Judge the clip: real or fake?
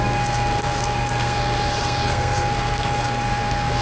fake